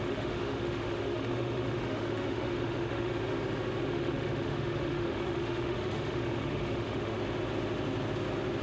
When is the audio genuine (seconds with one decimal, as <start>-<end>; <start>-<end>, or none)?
3.1-3.9; 7.2-8.6